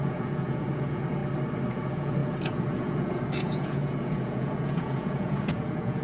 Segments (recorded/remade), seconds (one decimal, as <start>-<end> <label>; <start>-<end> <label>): 0.0-1.2 remade; 1.2-1.7 recorded; 1.7-6.0 remade